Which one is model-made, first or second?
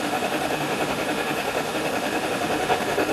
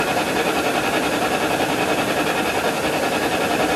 first